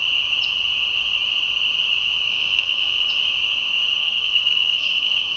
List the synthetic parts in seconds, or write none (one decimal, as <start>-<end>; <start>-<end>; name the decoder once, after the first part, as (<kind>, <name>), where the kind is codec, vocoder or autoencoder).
2.3-3.1 (codec, SNAC); 4.0-5.4